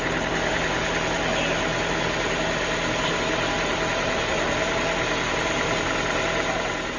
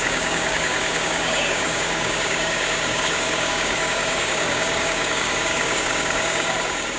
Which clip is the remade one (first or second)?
second